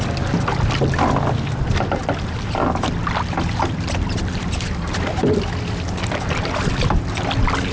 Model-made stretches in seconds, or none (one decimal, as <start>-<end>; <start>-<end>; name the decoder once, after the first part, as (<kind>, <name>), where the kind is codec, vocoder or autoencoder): none